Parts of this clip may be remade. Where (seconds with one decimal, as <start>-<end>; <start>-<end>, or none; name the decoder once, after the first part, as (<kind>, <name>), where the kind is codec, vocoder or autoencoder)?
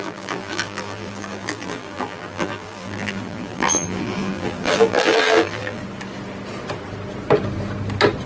0.0-5.8 (vocoder, BigVGAN v2)